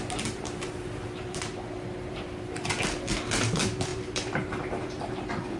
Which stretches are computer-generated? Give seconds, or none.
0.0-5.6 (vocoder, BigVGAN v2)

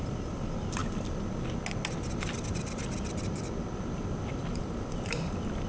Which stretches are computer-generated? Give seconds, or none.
none

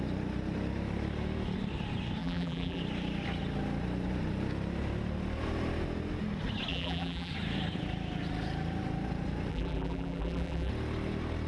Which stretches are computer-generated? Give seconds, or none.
2.2-2.8 (vocoder, BigVGAN v2); 6.7-7.3; 9.5-10.7